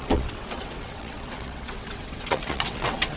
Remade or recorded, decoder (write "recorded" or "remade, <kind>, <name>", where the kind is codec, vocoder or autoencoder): remade, vocoder, WaveNeXt